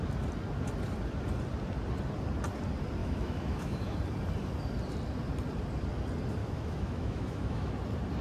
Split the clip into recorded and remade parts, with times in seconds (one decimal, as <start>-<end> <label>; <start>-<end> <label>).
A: 0.0-3.0 recorded; 3.0-4.0 remade; 4.0-6.4 recorded; 6.4-7.7 remade; 7.7-8.2 recorded